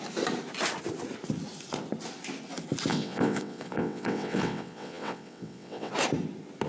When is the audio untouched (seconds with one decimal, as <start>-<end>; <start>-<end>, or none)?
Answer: 0.0-2.9; 5.9-6.7